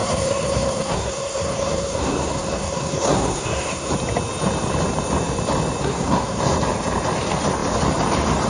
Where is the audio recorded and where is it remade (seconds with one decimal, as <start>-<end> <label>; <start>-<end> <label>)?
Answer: 0.0-3.9 remade; 3.9-5.8 recorded; 5.8-6.4 remade; 6.4-8.5 recorded